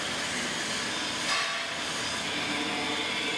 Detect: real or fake real